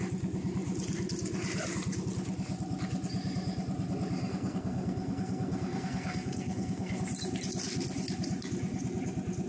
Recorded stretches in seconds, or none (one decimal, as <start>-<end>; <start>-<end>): 0.0-4.2; 7.0-9.5